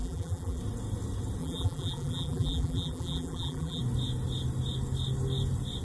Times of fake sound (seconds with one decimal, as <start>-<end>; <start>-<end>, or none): 0.0-0.6; 1.4-3.8